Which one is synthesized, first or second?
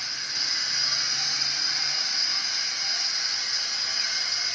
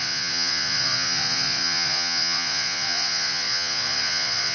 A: second